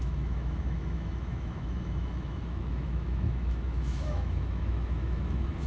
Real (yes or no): no